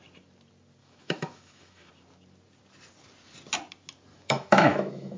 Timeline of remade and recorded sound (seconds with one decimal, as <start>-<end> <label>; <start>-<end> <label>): 0.0-0.8 recorded; 0.8-1.9 remade; 1.9-4.1 recorded; 4.1-5.2 remade